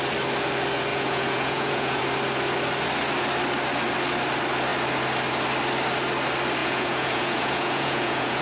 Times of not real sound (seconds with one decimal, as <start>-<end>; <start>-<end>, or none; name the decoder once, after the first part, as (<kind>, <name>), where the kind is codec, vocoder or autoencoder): 0.9-2.0 (vocoder, Vocos); 6.6-8.4